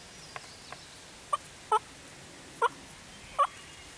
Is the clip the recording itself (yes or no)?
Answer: yes